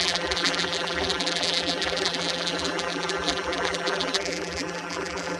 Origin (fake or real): fake